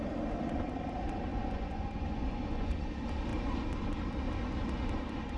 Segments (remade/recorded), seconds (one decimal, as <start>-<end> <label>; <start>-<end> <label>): 0.0-1.3 recorded; 1.3-2.9 remade; 2.9-5.4 recorded